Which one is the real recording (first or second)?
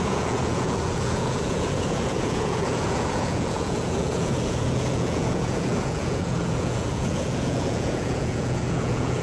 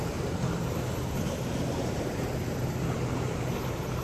second